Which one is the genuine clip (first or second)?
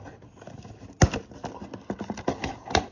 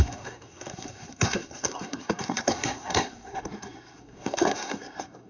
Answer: first